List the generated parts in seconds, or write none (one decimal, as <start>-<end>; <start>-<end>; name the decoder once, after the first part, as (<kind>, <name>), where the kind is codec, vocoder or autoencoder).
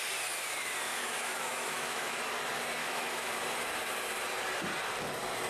0.9-2.2 (autoencoder, DAC-VAE); 2.8-3.3